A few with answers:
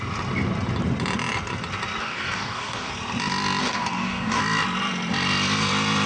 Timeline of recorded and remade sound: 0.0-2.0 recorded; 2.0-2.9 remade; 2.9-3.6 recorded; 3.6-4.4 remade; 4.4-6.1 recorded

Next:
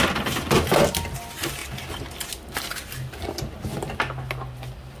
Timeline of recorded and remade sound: 0.0-5.0 recorded